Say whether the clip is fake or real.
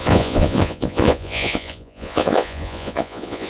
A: fake